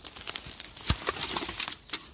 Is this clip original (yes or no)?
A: yes